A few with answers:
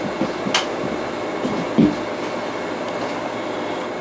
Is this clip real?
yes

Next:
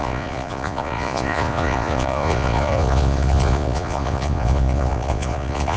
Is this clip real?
no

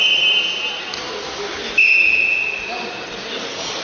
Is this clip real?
yes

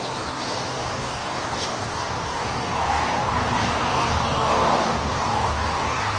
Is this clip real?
no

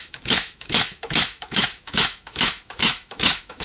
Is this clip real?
no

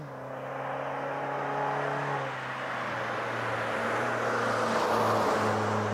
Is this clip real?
yes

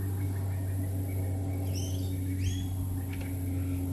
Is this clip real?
yes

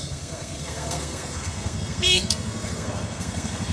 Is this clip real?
no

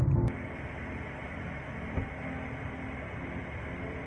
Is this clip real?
yes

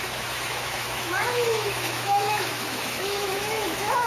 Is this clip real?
no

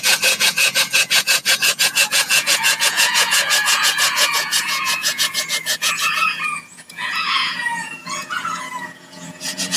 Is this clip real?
no